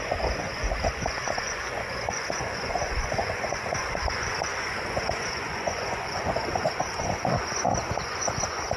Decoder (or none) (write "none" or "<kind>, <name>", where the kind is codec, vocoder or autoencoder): vocoder, Vocos